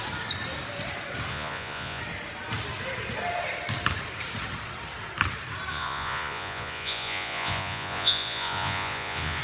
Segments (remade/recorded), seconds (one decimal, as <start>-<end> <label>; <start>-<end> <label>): 0.0-1.3 recorded; 1.3-2.0 remade; 2.0-5.7 recorded; 5.7-9.4 remade